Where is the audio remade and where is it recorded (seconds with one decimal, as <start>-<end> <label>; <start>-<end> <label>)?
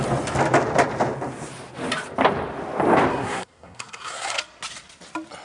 0.0-3.1 recorded; 3.1-4.4 remade; 4.4-5.4 recorded